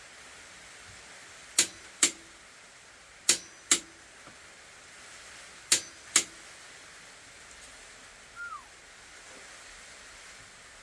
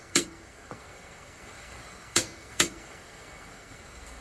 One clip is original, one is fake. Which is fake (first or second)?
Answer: second